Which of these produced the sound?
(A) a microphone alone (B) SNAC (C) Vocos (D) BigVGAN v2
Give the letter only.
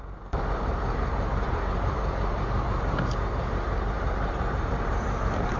D